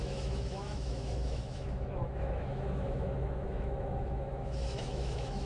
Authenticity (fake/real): fake